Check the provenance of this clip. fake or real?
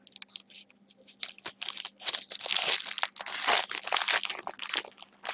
real